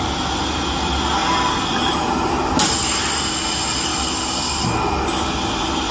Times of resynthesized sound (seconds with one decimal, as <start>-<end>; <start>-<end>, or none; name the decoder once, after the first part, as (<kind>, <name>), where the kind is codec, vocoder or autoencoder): none